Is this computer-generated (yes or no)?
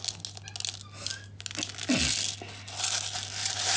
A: no